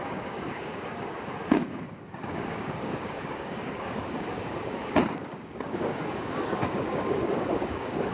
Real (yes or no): no